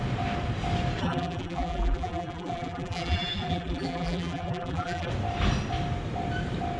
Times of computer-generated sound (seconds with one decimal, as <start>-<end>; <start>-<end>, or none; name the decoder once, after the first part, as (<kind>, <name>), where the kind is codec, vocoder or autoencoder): 1.0-5.1 (vocoder, BigVGAN v2)